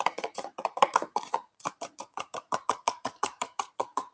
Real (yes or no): no